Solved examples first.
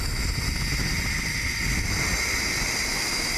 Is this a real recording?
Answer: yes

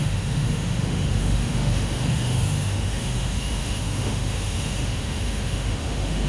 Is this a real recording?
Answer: no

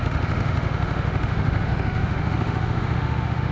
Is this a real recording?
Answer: no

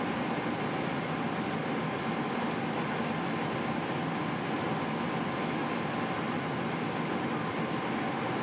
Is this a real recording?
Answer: yes